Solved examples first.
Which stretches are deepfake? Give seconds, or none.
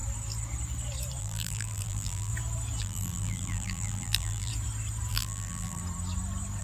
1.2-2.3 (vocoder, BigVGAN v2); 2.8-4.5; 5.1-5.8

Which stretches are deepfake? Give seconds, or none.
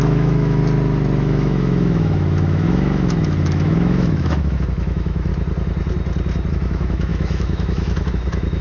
0.0-0.6 (autoencoder, DAC-VAE); 1.2-5.3; 6.5-8.6